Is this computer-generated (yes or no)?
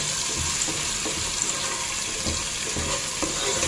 no